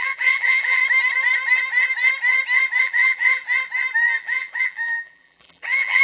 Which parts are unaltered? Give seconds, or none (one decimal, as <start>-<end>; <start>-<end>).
0.8-2.8; 3.4-4.2